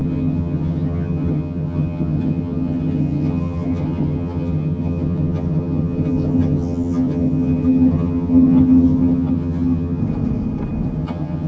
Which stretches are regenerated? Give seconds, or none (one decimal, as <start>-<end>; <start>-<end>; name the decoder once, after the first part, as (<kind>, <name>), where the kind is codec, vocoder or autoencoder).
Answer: 0.0-10.0 (vocoder, HiFi-GAN); 11.0-11.5